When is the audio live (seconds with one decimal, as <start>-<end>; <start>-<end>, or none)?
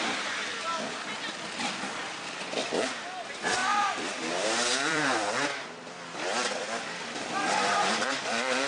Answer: 0.0-3.6